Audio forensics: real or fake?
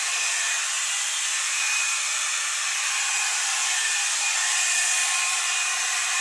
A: fake